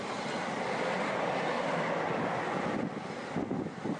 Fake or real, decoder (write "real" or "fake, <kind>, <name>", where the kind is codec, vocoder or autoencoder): real